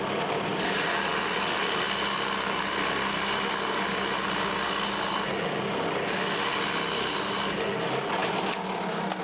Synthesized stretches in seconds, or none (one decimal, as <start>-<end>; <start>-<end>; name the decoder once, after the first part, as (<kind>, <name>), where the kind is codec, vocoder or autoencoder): none